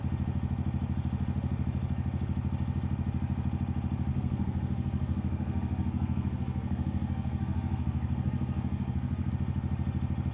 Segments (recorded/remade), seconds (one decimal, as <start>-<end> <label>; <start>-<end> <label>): 0.0-4.1 recorded; 4.1-9.3 remade; 9.3-10.3 recorded